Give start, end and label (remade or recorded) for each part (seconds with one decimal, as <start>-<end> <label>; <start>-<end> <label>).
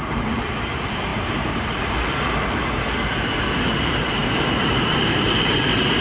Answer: 0.0-2.6 remade; 2.6-3.8 recorded; 3.8-6.0 remade